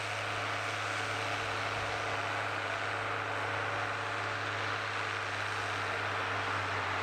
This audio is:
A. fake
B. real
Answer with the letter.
B